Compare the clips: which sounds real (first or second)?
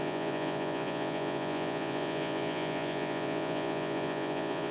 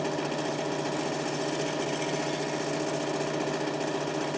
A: second